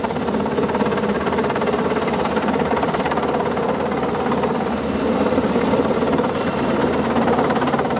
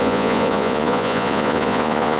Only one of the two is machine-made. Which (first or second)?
second